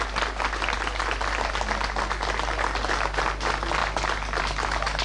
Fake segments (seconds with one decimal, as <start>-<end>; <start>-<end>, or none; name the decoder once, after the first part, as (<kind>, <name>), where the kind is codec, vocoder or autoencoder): none